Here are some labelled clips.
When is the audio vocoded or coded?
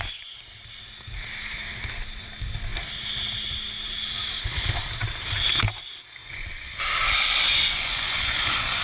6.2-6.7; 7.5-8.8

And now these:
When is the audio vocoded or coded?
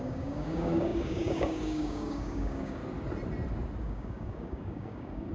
0.0-2.8; 3.8-5.3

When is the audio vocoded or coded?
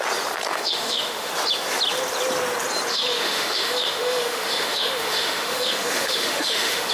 0.5-1.3; 2.9-6.9